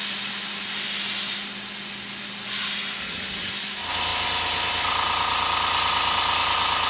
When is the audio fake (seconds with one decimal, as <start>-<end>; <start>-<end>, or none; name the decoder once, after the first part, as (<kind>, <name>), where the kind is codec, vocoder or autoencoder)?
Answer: 3.0-3.5 (vocoder, HiFi-GAN)